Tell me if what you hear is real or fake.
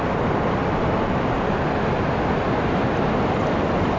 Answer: real